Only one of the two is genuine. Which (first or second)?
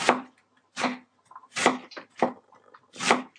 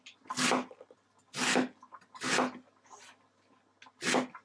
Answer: second